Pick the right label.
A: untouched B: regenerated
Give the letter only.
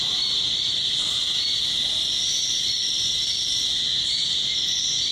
B